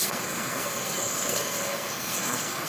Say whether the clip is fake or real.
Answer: fake